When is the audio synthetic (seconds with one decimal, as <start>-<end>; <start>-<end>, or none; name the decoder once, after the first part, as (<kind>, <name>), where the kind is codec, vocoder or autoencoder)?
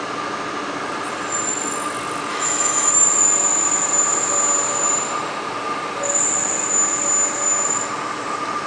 2.3-2.9 (autoencoder, DAC-VAE)